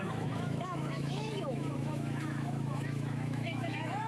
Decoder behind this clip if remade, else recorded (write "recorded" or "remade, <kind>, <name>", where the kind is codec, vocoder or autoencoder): remade, autoencoder, DAC-VAE